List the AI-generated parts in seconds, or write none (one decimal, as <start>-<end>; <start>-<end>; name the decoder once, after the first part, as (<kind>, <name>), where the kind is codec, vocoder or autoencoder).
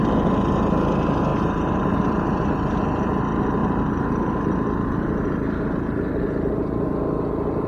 1.3-3.2 (vocoder, BigVGAN v2); 3.6-6.9